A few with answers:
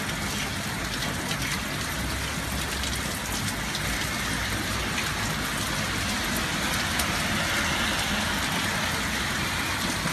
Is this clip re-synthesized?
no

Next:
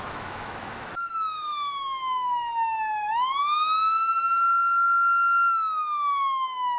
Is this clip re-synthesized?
yes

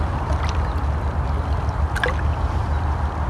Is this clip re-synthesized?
no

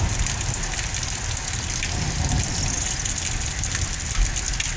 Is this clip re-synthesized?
no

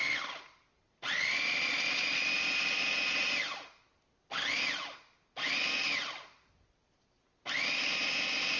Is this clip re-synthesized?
no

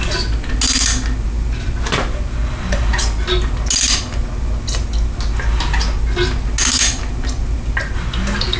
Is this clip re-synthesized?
no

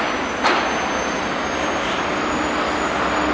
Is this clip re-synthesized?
no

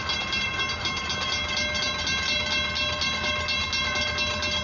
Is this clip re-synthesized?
no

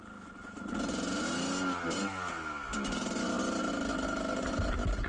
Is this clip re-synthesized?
no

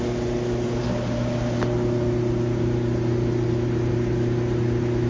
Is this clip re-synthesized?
no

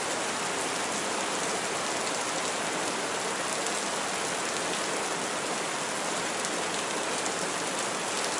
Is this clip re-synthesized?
no